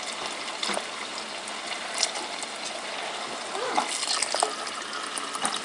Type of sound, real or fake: real